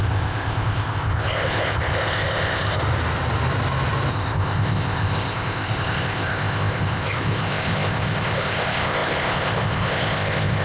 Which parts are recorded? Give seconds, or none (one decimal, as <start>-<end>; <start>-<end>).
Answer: 2.8-4.1